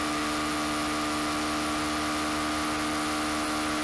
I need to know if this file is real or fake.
real